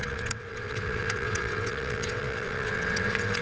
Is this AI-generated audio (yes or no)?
yes